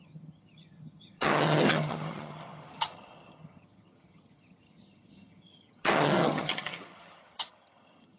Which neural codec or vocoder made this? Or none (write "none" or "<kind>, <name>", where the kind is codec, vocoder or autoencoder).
vocoder, HiFi-GAN